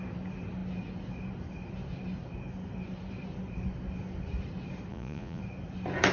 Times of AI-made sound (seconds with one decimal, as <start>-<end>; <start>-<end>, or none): 4.9-5.4